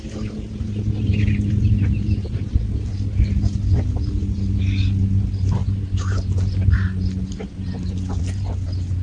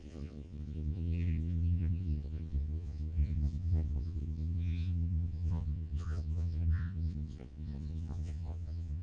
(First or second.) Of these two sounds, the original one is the first